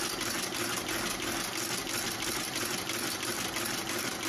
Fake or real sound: real